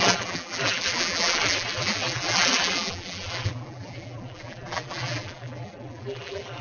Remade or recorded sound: remade